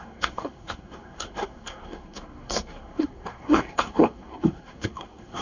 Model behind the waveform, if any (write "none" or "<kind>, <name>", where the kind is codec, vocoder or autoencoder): codec, SNAC